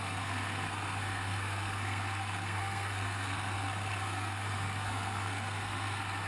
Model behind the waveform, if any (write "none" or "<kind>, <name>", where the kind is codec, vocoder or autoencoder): codec, SNAC